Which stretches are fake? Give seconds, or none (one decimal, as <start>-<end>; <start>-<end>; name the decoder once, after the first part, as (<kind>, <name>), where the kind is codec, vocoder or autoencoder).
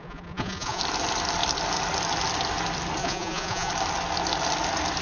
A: 0.0-0.8 (vocoder, Vocos); 3.0-3.7